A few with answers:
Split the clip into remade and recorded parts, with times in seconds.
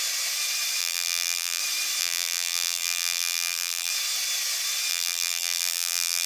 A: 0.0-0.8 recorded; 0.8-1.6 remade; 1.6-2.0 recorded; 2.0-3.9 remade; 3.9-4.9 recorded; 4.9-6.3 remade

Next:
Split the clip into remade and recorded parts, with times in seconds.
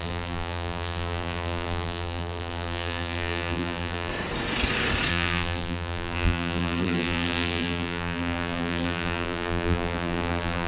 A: 0.0-4.1 remade; 4.1-5.1 recorded; 5.1-10.7 remade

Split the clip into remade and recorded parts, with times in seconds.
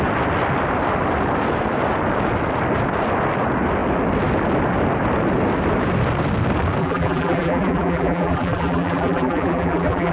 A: 0.0-6.8 recorded; 6.8-10.1 remade